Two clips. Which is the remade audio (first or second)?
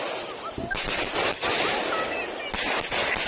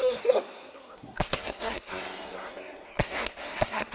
second